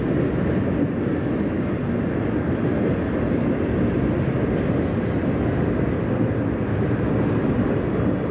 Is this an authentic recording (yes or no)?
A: yes